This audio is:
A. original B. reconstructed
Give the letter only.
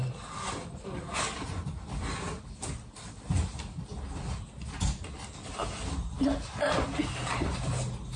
A